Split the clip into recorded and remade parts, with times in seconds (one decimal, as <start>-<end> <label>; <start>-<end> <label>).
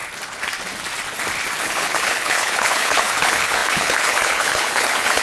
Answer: 0.0-1.6 recorded; 1.6-5.2 remade